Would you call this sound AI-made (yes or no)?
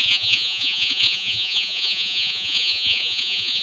yes